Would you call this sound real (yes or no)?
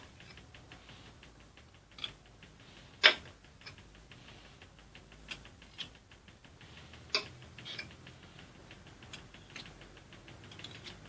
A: yes